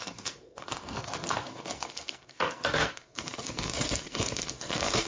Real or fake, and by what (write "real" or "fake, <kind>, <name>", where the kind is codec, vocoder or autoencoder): fake, codec, SNAC